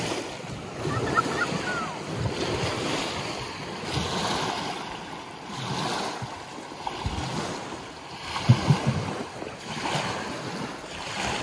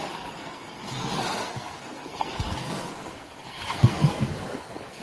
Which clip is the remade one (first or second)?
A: second